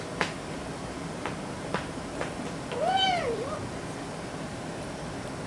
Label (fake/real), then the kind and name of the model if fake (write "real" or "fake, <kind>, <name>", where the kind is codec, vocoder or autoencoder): real